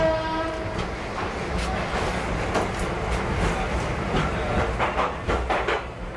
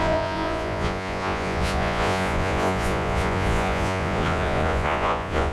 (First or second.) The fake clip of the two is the second